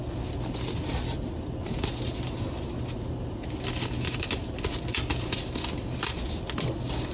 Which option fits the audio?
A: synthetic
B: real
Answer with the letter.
B